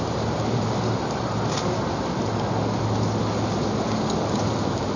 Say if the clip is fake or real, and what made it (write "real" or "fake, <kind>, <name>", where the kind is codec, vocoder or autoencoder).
real